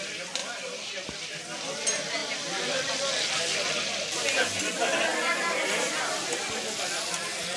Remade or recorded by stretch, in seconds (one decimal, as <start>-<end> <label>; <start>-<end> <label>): 0.0-7.6 recorded